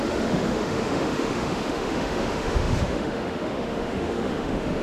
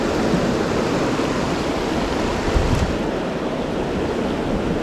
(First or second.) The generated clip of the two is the first